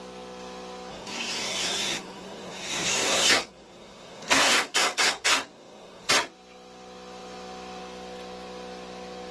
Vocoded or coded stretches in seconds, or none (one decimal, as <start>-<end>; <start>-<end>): 0.9-6.1